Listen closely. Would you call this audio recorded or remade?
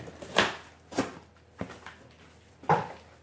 recorded